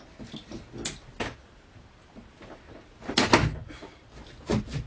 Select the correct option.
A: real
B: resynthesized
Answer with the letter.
A